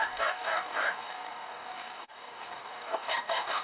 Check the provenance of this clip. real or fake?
fake